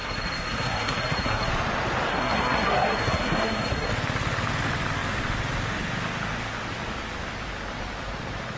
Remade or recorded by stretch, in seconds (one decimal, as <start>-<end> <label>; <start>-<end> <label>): 0.0-1.5 remade; 1.5-2.1 recorded; 2.1-3.9 remade; 3.9-8.6 recorded